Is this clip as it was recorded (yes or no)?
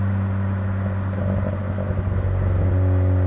yes